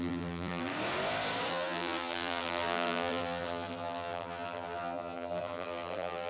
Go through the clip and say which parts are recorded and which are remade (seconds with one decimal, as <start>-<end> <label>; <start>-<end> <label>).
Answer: 0.0-0.7 remade; 0.7-1.5 recorded; 1.5-6.3 remade

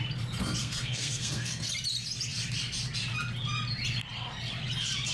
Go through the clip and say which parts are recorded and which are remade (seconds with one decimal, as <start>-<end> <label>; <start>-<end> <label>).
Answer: 0.0-0.6 recorded; 0.6-1.7 remade; 1.7-5.1 recorded